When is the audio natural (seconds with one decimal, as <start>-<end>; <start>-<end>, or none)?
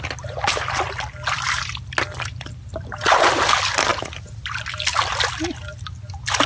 0.0-3.9; 5.3-6.5